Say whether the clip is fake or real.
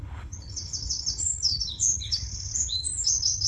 fake